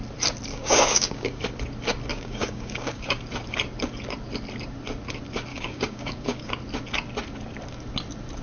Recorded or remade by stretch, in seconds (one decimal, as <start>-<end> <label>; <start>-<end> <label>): 0.0-0.5 recorded; 0.5-1.4 remade; 1.4-2.1 recorded; 2.1-3.2 remade; 3.2-5.5 recorded; 5.5-6.5 remade; 6.5-8.4 recorded